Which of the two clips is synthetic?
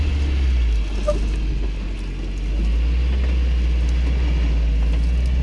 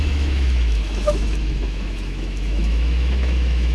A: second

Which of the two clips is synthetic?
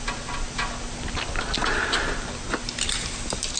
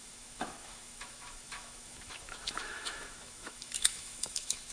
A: second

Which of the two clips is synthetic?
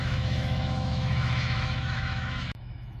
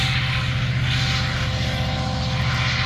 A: first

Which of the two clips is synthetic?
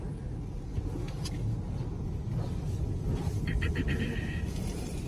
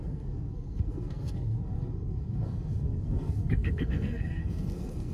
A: second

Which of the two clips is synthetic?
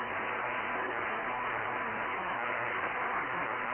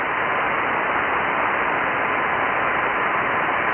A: first